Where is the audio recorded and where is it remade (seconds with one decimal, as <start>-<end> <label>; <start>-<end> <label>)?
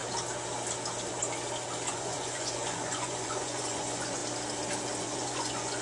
0.0-1.9 recorded; 1.9-4.2 remade; 4.2-5.0 recorded; 5.0-5.8 remade